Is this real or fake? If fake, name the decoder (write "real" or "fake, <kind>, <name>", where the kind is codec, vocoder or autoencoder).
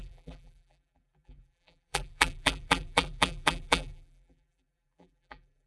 fake, vocoder, BigVGAN v2